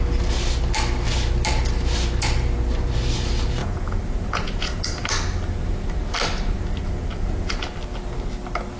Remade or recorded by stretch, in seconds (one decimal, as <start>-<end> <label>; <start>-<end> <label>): 0.0-3.6 recorded; 3.6-4.8 remade; 4.8-7.1 recorded; 7.1-7.7 remade; 7.7-8.8 recorded